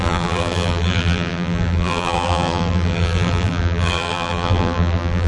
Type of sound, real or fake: fake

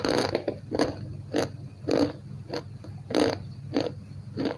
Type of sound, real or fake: real